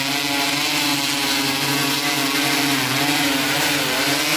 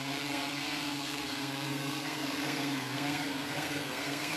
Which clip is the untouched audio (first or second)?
first